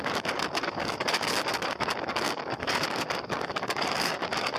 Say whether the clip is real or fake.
fake